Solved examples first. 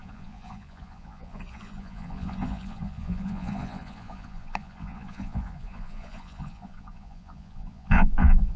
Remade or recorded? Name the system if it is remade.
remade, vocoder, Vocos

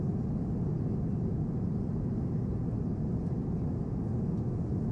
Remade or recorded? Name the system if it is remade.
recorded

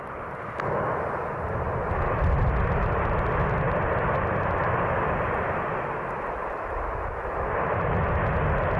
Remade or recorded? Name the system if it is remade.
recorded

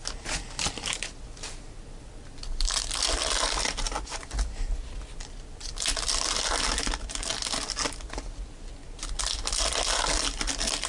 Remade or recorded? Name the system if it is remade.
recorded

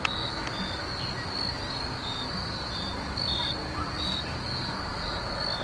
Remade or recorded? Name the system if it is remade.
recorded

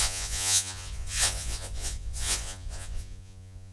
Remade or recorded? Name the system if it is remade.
remade, vocoder, Vocos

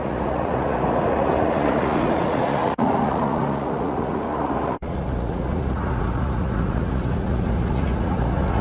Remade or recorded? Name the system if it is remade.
remade, vocoder, Vocos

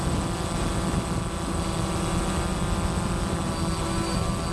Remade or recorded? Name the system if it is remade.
recorded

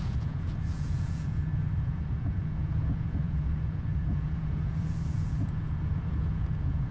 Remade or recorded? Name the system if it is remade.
remade, vocoder, Vocos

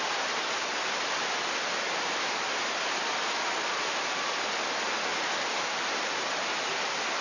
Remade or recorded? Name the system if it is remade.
recorded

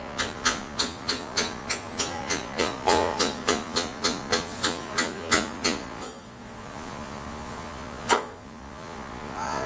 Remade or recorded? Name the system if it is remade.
remade, vocoder, Vocos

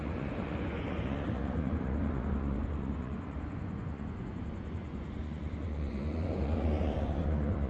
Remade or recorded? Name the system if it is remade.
remade, vocoder, Vocos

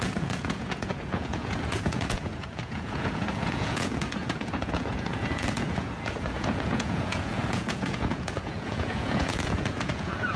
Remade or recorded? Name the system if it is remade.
remade, vocoder, Vocos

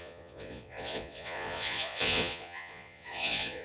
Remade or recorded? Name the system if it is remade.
remade, vocoder, Vocos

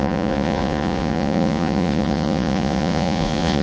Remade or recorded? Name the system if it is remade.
remade, vocoder, Vocos